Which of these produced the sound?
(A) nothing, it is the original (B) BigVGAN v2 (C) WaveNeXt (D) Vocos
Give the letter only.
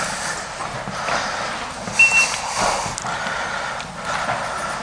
A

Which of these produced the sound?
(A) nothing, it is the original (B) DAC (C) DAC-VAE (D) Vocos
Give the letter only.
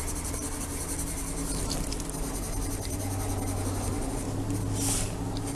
A